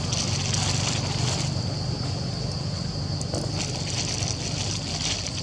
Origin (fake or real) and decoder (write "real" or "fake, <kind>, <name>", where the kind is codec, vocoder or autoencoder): real